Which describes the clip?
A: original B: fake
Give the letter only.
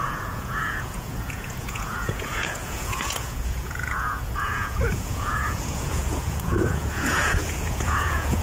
B